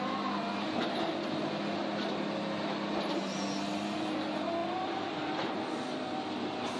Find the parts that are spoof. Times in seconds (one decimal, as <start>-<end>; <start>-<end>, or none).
4.6-6.8